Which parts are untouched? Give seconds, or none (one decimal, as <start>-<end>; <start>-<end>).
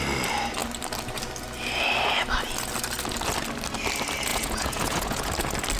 0.0-4.3; 5.3-5.8